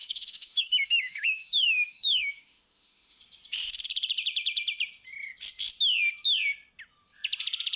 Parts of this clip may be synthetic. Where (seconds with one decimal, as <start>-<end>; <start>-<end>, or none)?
0.0-3.2